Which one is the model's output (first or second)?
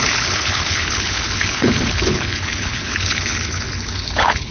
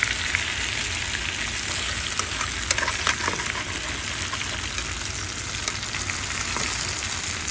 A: first